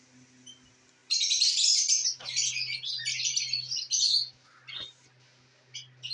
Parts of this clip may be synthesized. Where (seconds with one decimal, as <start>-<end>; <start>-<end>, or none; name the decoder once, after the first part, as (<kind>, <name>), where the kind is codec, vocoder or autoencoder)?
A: none